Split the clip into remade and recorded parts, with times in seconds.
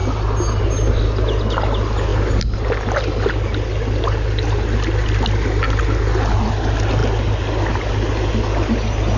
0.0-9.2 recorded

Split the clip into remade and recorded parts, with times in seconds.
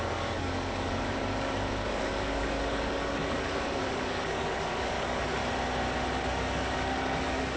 0.0-5.4 remade; 5.4-6.3 recorded; 6.3-7.6 remade